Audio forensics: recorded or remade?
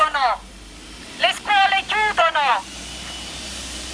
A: remade